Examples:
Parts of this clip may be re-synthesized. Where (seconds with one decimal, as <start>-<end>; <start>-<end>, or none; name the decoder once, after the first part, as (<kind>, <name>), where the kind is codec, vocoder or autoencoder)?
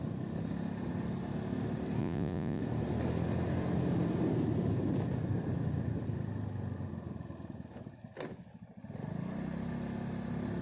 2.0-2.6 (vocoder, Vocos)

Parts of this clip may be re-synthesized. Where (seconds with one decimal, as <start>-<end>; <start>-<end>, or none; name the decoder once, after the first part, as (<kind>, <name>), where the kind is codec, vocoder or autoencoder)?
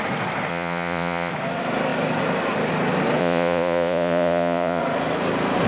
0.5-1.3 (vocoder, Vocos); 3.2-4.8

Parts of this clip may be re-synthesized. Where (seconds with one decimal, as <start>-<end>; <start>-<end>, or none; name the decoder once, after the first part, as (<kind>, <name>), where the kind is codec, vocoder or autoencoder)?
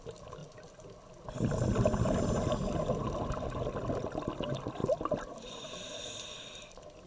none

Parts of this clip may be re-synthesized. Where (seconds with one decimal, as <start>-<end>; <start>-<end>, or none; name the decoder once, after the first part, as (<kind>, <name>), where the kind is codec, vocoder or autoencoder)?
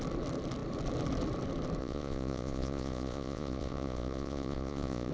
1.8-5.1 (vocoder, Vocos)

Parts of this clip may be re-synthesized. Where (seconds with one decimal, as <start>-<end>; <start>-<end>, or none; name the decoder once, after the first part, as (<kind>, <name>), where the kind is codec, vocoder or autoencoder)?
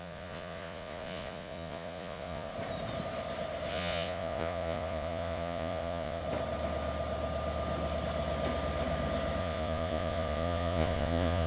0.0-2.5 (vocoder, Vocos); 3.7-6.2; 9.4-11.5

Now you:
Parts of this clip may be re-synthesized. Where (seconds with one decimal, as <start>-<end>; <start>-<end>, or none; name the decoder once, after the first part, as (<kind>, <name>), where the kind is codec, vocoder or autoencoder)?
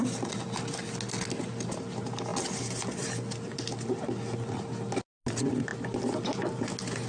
none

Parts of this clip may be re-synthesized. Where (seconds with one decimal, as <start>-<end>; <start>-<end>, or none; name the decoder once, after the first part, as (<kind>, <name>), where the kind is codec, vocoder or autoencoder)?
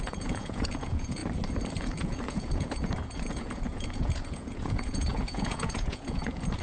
0.0-1.2 (vocoder, Vocos); 1.7-6.6